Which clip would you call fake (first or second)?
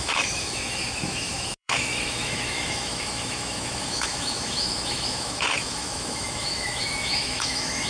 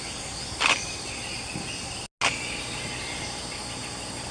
first